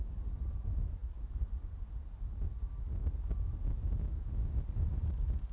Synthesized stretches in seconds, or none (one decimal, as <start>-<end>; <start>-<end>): none